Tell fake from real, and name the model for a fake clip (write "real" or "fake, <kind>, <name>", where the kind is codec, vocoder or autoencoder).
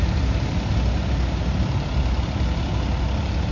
real